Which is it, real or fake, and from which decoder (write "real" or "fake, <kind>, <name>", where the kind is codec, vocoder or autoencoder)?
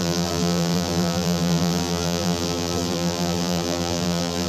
fake, vocoder, BigVGAN v2